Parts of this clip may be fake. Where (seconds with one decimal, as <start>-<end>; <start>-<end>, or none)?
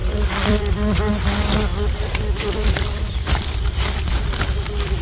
0.0-0.7; 1.7-3.7